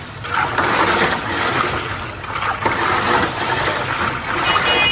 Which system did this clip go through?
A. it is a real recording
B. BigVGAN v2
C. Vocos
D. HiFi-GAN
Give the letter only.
A